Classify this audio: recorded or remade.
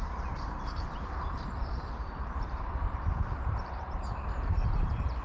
remade